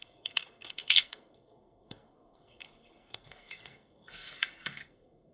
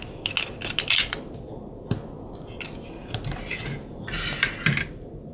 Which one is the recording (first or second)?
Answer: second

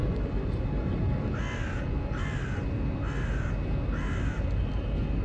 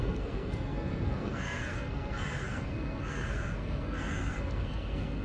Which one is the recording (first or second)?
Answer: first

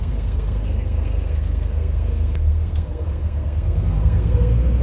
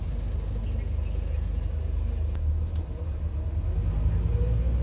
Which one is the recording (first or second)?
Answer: second